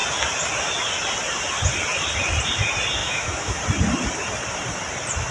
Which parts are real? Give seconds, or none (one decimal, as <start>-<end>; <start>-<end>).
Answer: 0.0-3.0; 3.6-5.3